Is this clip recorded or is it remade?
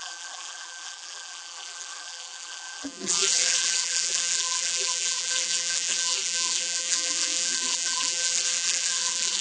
remade